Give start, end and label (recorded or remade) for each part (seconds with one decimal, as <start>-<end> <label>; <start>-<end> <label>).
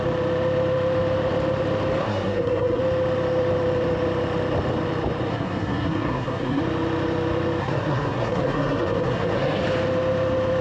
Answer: 0.0-2.0 recorded; 2.0-2.8 remade; 2.8-5.3 recorded; 5.3-6.6 remade; 6.6-7.6 recorded; 7.6-9.6 remade; 9.6-10.6 recorded